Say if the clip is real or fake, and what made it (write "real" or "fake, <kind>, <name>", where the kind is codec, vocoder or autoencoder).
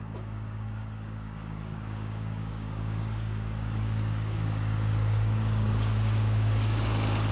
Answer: fake, codec, DAC